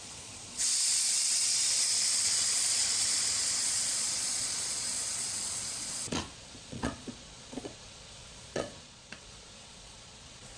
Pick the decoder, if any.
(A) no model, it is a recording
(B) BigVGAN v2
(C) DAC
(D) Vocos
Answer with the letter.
D